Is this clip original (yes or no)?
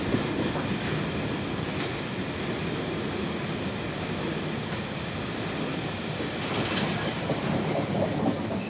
yes